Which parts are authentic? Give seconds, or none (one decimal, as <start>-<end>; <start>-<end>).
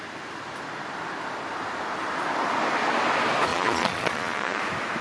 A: 0.0-3.5; 4.6-5.0